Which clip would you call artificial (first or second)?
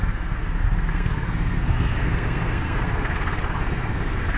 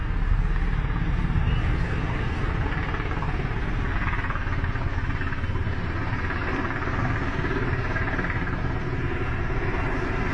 first